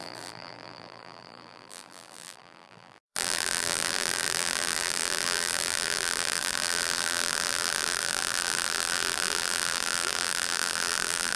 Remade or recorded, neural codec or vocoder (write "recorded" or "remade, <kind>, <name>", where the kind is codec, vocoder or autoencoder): remade, vocoder, BigVGAN v2